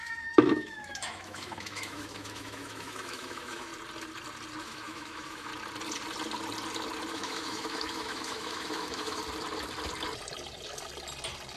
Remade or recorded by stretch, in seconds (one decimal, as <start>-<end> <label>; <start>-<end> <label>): 0.0-3.7 remade; 3.7-4.6 recorded; 4.6-5.5 remade; 5.5-7.1 recorded; 7.1-9.2 remade; 9.2-11.6 recorded